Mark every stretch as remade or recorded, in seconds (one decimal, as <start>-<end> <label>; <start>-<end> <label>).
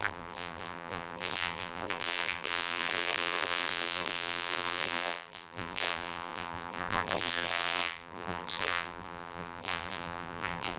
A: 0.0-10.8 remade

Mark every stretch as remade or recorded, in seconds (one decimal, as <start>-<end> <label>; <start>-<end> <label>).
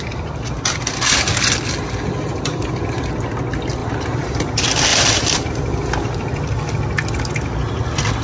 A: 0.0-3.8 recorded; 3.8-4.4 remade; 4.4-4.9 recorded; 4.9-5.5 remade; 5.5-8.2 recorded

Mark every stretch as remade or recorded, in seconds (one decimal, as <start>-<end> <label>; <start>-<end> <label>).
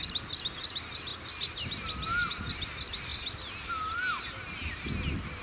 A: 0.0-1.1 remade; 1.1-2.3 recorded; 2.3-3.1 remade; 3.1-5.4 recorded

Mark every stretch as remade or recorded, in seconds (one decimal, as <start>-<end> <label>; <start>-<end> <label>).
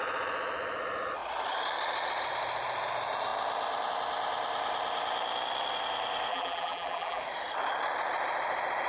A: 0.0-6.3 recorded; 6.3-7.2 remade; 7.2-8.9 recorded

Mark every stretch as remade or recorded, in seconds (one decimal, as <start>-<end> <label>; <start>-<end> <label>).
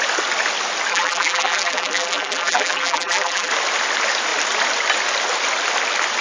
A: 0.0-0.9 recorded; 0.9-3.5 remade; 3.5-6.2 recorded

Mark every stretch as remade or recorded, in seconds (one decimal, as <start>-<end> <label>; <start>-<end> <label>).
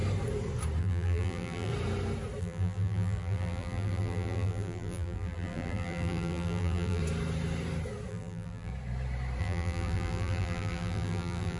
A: 0.0-0.8 recorded; 0.8-1.7 remade; 1.7-2.4 recorded; 2.4-7.0 remade; 7.0-8.1 recorded; 8.1-8.7 remade; 8.7-9.4 recorded; 9.4-11.6 remade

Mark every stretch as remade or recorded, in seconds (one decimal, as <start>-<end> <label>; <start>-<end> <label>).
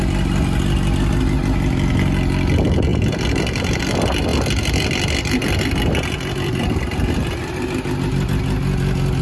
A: 0.0-2.9 recorded; 2.9-3.8 remade; 3.8-4.3 recorded; 4.3-7.6 remade; 7.6-9.2 recorded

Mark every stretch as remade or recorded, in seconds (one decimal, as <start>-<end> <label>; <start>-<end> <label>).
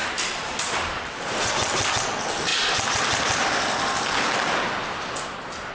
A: 0.0-1.5 remade; 1.5-5.7 recorded